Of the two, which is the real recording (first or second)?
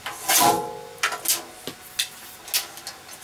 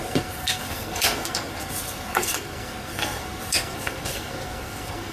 first